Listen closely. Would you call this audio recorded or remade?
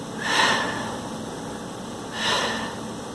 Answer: recorded